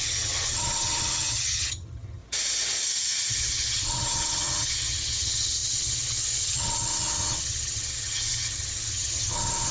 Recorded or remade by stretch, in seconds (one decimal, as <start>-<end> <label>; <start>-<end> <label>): 0.0-2.2 remade; 2.2-3.3 recorded; 3.3-9.7 remade